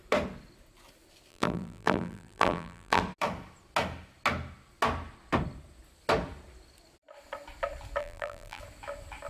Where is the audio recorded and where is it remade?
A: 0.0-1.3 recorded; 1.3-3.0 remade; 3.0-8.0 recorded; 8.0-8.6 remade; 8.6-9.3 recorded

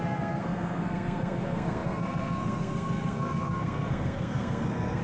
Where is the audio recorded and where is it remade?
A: 0.0-5.0 remade

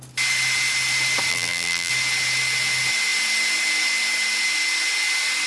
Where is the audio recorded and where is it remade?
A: 0.0-1.3 recorded; 1.3-1.9 remade; 1.9-5.5 recorded

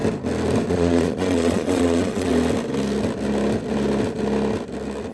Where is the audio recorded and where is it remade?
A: 0.0-0.7 recorded; 0.7-2.3 remade; 2.3-5.1 recorded

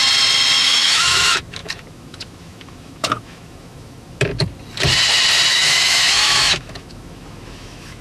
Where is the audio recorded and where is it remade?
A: 0.0-0.6 recorded; 0.6-4.3 remade; 4.3-5.5 recorded; 5.5-8.0 remade

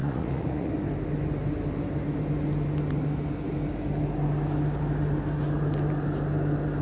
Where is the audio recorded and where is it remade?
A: 0.0-0.7 remade; 0.7-6.8 recorded